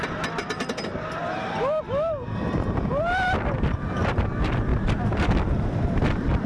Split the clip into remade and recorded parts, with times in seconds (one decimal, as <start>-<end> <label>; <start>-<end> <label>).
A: 0.0-1.2 recorded; 1.2-4.0 remade; 4.0-4.7 recorded; 4.7-6.5 remade